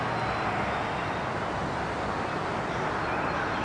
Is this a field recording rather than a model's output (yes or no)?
yes